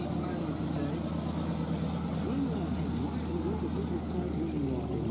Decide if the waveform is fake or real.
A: real